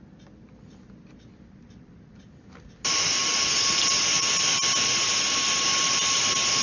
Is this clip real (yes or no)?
yes